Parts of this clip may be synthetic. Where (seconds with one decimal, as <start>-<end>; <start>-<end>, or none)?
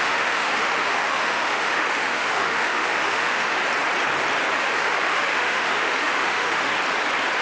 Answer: 0.0-3.6; 4.5-6.7